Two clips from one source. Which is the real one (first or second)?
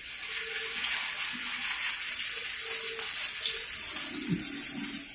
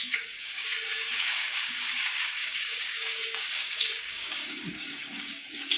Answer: first